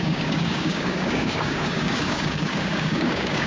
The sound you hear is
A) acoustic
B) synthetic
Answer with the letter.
B